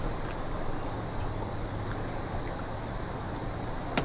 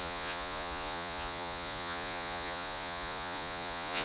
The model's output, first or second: second